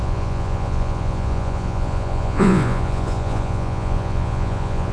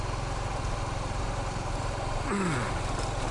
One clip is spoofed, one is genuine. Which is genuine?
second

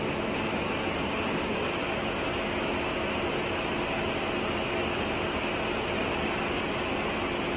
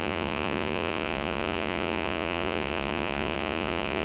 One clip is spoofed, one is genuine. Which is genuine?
first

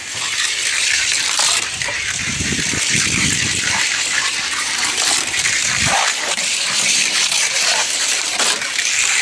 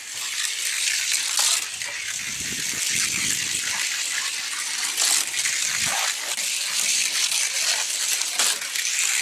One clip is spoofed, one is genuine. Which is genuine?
second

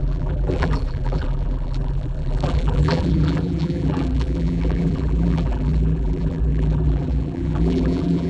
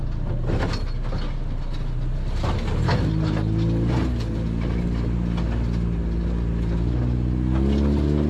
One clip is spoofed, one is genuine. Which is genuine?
second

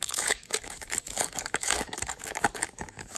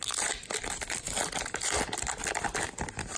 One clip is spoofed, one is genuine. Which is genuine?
second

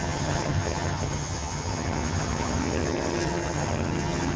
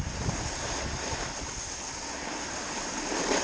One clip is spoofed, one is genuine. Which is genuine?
second